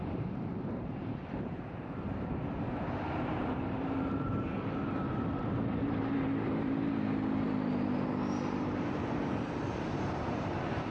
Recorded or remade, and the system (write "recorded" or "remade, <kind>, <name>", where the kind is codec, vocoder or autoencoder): remade, vocoder, BigVGAN v2